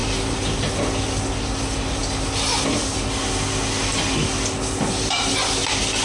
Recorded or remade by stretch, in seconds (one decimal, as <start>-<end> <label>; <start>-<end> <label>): 0.0-6.0 recorded